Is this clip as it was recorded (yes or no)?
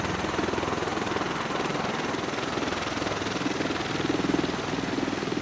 yes